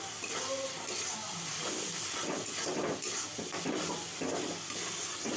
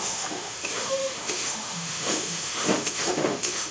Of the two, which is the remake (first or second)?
second